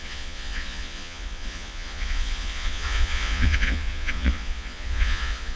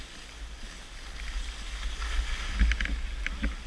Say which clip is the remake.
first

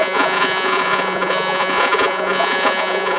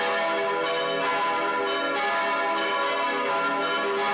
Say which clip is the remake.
first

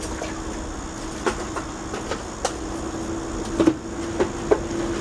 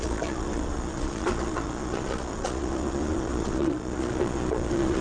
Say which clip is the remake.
second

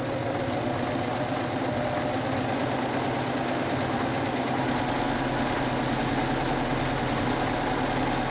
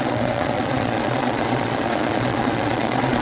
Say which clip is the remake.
second